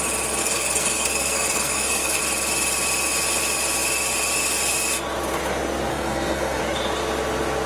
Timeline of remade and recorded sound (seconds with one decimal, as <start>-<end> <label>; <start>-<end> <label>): 0.0-0.4 recorded; 0.4-2.2 remade; 2.2-5.9 recorded; 5.9-6.6 remade; 6.6-7.7 recorded